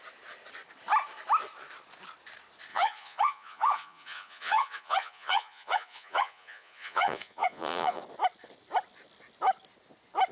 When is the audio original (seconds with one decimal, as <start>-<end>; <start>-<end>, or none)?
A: 0.0-2.7; 8.0-10.3